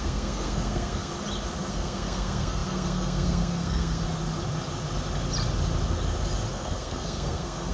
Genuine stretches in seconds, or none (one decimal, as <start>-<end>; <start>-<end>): 1.1-1.7; 4.0-6.5